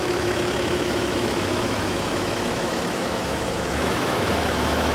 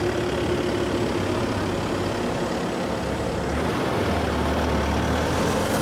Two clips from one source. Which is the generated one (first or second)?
first